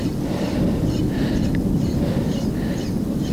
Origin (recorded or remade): recorded